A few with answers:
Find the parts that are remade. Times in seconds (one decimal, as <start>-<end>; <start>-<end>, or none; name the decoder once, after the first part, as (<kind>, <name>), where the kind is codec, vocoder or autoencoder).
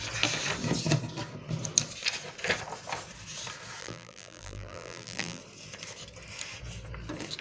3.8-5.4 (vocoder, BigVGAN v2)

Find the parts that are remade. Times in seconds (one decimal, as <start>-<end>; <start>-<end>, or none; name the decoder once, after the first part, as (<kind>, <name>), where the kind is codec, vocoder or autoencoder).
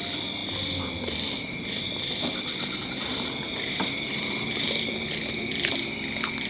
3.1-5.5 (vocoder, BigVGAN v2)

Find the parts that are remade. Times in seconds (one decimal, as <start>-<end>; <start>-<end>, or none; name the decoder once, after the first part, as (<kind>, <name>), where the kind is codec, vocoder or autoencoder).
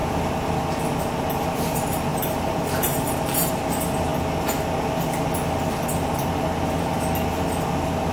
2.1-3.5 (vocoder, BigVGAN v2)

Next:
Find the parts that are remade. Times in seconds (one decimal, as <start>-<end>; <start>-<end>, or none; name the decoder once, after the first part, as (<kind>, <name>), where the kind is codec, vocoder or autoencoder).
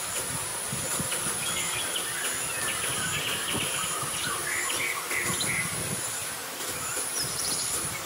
0.0-0.5 (vocoder, BigVGAN v2); 3.2-4.4; 5.5-8.1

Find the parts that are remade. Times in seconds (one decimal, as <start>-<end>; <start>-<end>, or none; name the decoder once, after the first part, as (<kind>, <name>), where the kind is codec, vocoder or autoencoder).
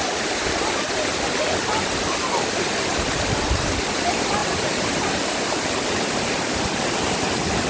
4.4-6.6 (vocoder, BigVGAN v2)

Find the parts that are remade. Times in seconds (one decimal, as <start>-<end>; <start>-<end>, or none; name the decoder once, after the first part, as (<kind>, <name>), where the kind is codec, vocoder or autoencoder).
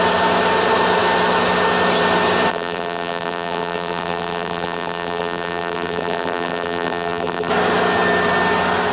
2.5-7.5 (vocoder, BigVGAN v2)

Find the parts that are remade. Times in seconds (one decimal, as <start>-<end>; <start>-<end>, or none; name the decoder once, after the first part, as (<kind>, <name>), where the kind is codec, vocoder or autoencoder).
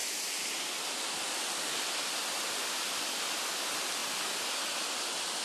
0.0-3.2 (vocoder, BigVGAN v2)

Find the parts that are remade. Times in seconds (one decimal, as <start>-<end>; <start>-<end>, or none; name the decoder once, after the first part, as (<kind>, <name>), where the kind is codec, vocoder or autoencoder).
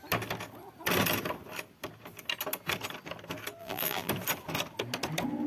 3.6-4.1 (vocoder, BigVGAN v2)